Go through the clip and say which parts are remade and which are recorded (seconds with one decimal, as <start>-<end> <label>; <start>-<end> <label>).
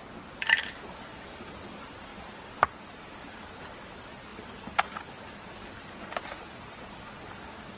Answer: 0.0-7.8 recorded